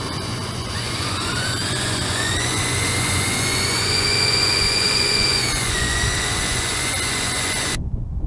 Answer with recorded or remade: remade